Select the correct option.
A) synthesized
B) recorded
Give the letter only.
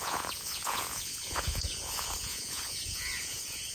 A